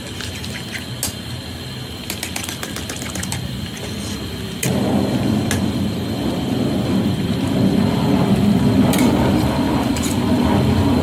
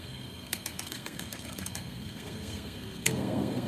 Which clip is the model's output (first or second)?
second